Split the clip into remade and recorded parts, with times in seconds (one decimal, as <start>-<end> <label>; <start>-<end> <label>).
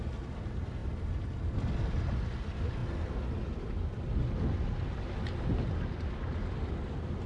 0.0-7.3 recorded